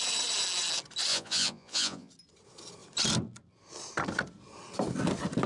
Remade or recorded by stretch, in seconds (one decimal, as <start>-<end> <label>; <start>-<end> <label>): 0.0-1.1 recorded; 1.1-2.1 remade; 2.1-5.5 recorded